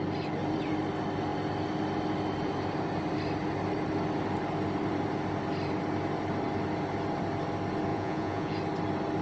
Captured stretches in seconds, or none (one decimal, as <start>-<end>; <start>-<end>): 0.0-7.9; 8.6-9.2